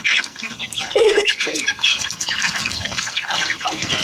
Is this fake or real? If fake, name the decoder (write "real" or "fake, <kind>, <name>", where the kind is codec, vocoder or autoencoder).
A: fake, codec, SNAC